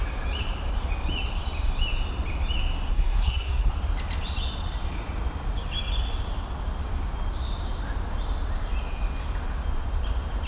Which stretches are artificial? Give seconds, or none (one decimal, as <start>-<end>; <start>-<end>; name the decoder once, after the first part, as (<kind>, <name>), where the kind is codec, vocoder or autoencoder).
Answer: 2.9-3.7 (codec, SNAC)